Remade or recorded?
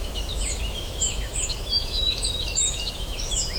remade